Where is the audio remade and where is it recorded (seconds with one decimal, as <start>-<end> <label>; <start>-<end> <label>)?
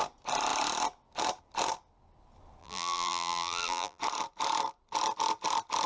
0.0-2.6 recorded; 2.6-4.0 remade; 4.0-5.9 recorded